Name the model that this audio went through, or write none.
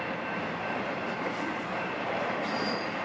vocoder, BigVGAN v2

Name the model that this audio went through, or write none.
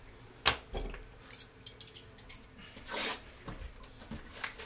none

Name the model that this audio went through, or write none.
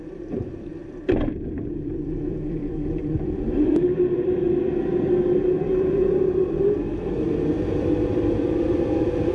vocoder, BigVGAN v2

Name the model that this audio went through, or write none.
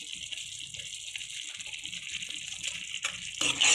none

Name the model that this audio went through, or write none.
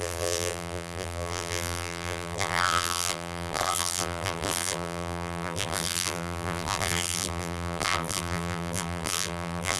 vocoder, BigVGAN v2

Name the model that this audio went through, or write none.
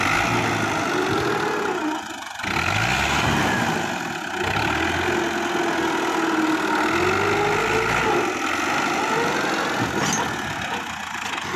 none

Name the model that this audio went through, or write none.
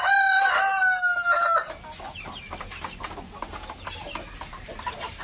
none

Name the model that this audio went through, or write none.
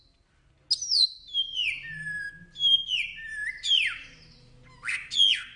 none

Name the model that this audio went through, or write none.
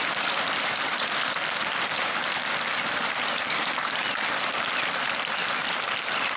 vocoder, BigVGAN v2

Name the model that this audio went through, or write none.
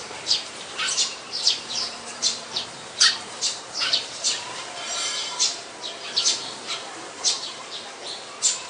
vocoder, BigVGAN v2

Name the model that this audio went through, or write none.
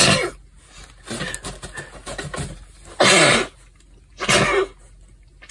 none